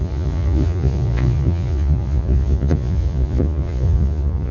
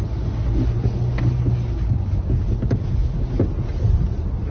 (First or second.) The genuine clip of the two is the second